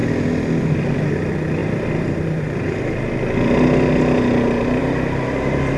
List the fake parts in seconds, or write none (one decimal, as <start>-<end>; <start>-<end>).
1.6-2.9; 4.8-5.8